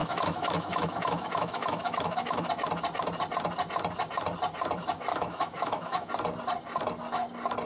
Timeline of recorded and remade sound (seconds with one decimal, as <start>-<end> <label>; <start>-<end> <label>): 0.0-2.5 remade; 2.5-5.1 recorded; 5.1-6.1 remade; 6.1-7.7 recorded